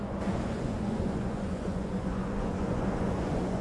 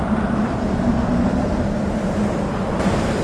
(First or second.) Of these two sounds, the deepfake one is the first